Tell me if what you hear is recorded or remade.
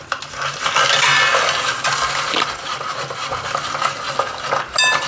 recorded